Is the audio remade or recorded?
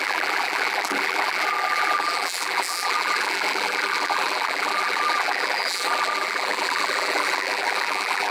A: remade